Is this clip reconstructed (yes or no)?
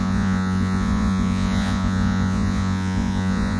yes